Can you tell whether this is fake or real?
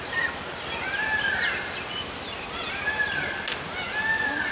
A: real